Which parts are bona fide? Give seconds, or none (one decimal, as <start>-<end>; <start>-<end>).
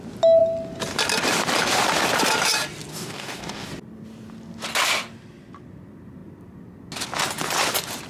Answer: 0.0-2.9; 3.7-8.1